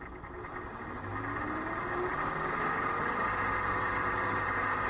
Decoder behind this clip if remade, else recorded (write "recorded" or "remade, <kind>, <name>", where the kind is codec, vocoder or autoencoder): recorded